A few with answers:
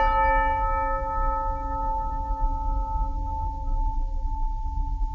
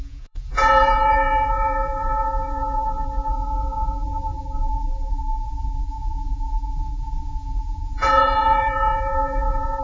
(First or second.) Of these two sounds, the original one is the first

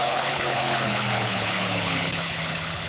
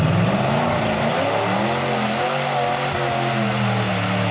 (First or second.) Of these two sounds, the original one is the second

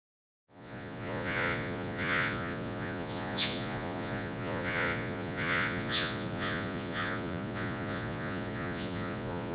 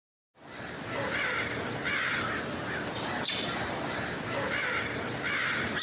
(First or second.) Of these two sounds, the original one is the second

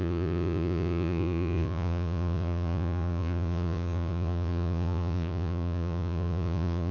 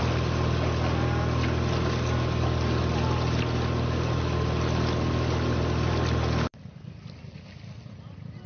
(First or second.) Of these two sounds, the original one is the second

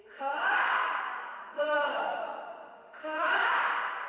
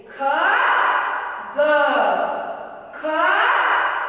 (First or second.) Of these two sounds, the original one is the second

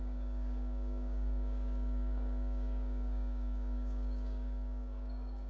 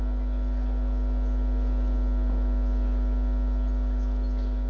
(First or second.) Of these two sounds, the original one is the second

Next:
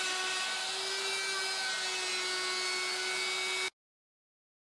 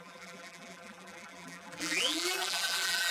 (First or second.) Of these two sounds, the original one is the first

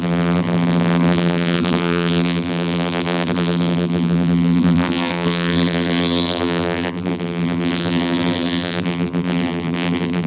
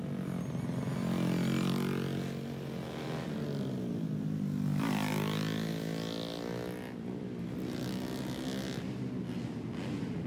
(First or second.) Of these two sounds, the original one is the second